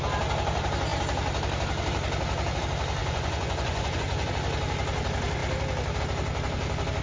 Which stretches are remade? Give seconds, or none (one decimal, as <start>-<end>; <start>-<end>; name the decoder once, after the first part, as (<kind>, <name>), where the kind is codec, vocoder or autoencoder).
3.0-4.3 (vocoder, Vocos)